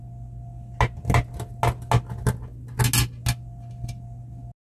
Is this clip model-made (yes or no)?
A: no